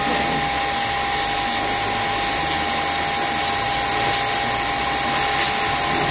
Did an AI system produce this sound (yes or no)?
no